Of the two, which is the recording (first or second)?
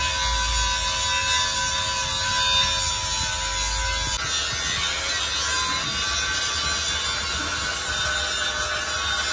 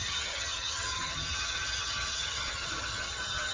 first